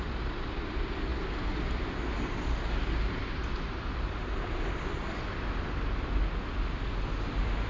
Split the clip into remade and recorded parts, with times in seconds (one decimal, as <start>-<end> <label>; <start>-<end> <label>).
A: 0.0-7.7 recorded